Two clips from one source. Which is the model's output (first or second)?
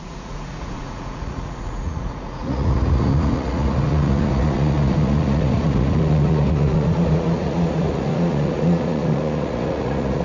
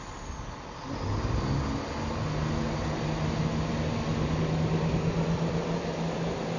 first